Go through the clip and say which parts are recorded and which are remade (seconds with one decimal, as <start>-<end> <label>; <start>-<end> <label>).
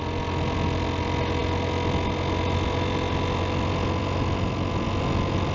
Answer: 0.0-5.5 recorded